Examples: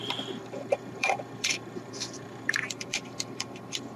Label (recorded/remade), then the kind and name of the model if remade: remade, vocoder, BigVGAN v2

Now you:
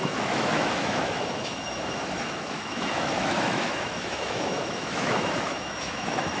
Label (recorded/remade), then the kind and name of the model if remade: remade, autoencoder, DAC-VAE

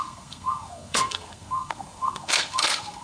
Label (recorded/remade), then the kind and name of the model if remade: remade, codec, SNAC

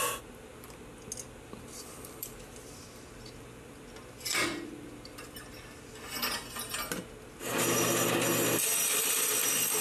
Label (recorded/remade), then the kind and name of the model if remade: recorded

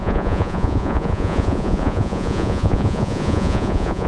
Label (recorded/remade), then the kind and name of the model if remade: remade, vocoder, Vocos